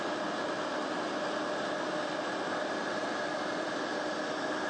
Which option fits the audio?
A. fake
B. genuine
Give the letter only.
B